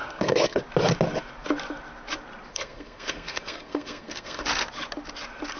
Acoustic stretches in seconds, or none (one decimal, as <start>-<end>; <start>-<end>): 0.6-2.5; 4.4-5.6